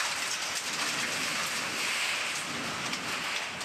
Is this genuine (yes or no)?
yes